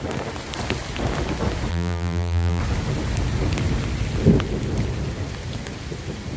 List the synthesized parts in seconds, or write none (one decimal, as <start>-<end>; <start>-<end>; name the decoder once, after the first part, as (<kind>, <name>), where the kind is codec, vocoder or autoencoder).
1.7-2.6 (vocoder, BigVGAN v2)